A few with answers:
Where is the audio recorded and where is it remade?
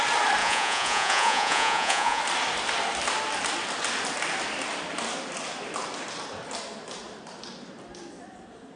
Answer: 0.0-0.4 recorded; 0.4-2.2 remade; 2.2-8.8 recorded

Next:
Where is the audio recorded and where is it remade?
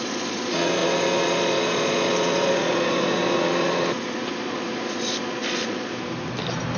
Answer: 0.0-5.9 remade; 5.9-6.8 recorded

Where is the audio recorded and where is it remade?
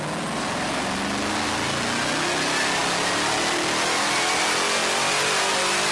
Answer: 0.0-5.9 recorded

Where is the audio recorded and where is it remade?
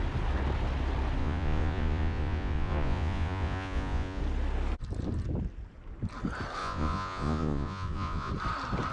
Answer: 0.0-1.2 recorded; 1.2-4.2 remade; 4.2-6.6 recorded; 6.6-8.3 remade; 8.3-8.9 recorded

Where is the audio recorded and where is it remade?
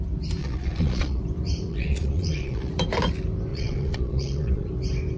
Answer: 0.0-0.4 recorded; 0.4-1.2 remade; 1.2-1.7 recorded; 1.7-2.7 remade; 2.7-3.5 recorded; 3.5-4.7 remade; 4.7-5.2 recorded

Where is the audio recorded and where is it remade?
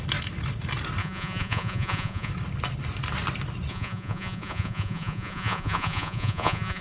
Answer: 0.0-1.0 recorded; 1.0-2.3 remade; 2.3-3.7 recorded; 3.7-6.8 remade